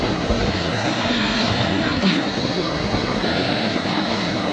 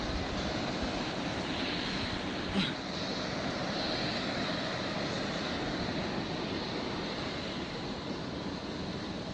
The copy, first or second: first